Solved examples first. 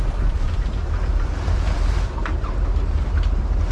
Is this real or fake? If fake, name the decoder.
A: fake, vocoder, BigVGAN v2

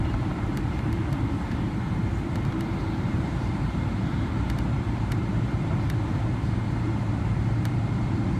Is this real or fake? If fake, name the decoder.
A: fake, vocoder, BigVGAN v2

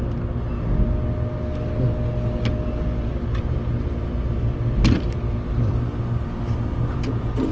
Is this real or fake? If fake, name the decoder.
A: real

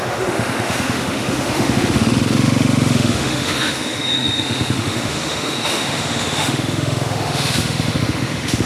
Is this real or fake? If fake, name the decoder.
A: fake, autoencoder, DAC-VAE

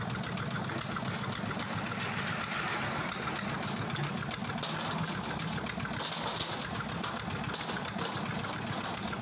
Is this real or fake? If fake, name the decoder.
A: real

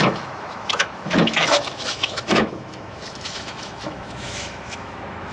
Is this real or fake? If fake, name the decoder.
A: fake, autoencoder, DAC-VAE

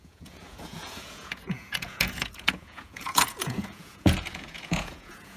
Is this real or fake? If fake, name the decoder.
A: fake, vocoder, Vocos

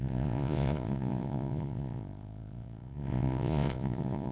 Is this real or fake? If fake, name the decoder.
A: fake, vocoder, Vocos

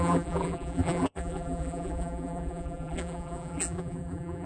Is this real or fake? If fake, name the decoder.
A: fake, vocoder, BigVGAN v2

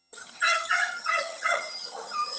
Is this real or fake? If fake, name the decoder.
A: fake, vocoder, HiFi-GAN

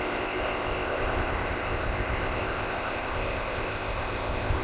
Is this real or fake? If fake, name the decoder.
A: fake, codec, ZipCodec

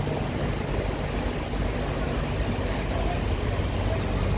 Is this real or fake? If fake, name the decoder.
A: real